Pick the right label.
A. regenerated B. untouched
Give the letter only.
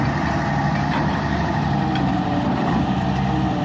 B